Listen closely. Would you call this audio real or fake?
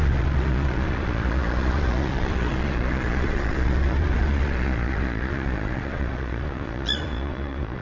fake